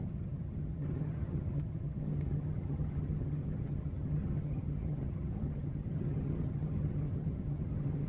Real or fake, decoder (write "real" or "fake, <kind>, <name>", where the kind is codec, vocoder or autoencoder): fake, vocoder, HiFi-GAN